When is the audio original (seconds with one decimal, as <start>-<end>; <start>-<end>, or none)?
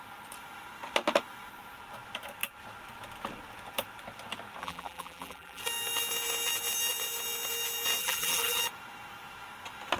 0.0-4.6; 5.6-8.0; 8.6-10.0